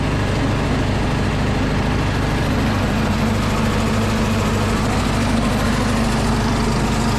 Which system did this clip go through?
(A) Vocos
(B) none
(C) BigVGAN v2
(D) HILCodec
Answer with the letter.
B